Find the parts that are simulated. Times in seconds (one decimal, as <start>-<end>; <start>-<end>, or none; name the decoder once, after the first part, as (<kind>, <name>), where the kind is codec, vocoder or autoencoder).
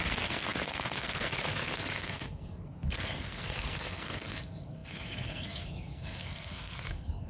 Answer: 0.0-7.3 (codec, SNAC)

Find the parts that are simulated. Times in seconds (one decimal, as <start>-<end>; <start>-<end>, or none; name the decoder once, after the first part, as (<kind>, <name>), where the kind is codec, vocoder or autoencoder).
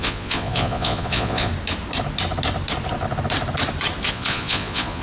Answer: 0.0-1.5 (vocoder, Vocos); 4.1-5.0